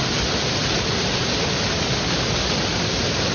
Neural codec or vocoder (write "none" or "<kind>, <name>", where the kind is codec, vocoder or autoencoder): none